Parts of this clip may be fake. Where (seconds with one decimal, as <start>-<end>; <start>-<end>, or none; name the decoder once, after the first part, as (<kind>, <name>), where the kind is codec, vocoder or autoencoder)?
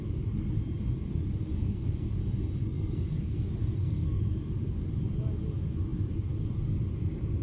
1.5-2.2 (codec, SNAC); 2.6-4.2